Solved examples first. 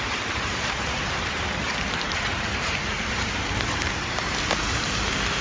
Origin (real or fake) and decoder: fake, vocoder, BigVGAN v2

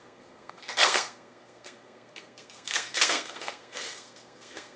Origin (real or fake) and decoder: fake, codec, SNAC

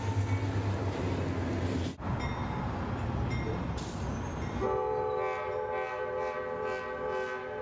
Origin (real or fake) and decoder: real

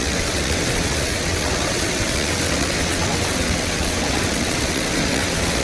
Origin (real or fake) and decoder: fake, vocoder, WaveNeXt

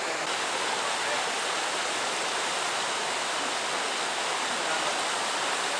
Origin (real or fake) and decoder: real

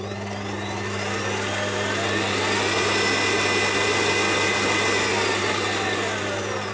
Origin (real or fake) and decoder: real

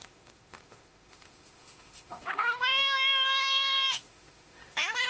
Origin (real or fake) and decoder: fake, autoencoder, DAC-VAE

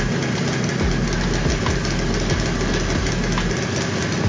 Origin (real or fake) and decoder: real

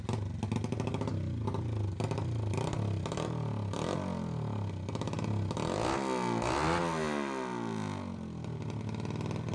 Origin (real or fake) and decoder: real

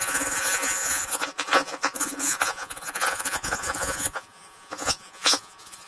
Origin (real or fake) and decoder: fake, vocoder, Vocos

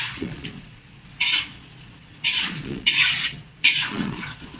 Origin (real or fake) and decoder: fake, vocoder, Vocos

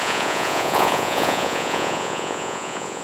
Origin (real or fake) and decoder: fake, vocoder, Vocos